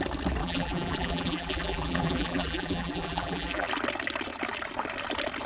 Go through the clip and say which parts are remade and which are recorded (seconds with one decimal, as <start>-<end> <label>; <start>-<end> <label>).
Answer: 0.0-0.4 recorded; 0.4-3.7 remade; 3.7-5.5 recorded